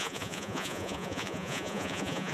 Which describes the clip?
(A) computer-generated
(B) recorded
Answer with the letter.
A